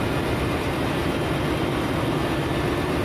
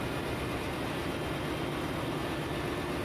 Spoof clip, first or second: first